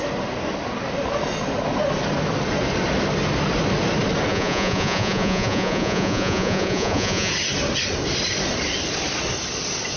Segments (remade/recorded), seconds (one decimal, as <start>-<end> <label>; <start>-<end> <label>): 0.0-4.3 recorded; 4.3-7.3 remade; 7.3-10.0 recorded